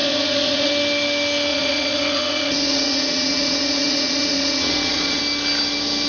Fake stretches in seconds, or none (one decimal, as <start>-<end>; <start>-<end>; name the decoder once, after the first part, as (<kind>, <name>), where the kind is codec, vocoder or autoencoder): 0.0-0.7 (vocoder, Vocos); 1.5-5.2